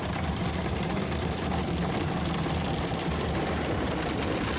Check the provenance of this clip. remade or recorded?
recorded